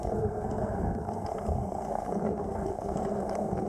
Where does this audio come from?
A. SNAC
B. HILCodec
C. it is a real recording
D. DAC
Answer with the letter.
A